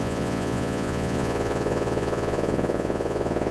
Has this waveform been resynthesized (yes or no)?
yes